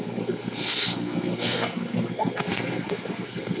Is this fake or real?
fake